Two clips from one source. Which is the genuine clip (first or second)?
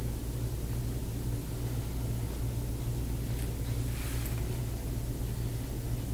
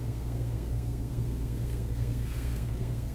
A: first